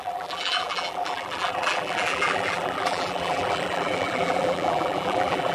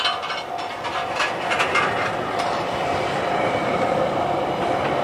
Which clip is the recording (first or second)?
second